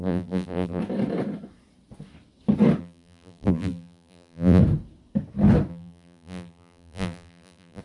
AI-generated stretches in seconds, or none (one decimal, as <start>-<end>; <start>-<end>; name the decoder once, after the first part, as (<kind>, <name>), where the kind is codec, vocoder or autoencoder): 0.0-0.8 (vocoder, BigVGAN v2); 2.8-4.6; 5.7-7.8